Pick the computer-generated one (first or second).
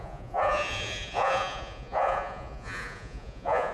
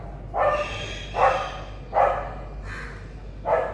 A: first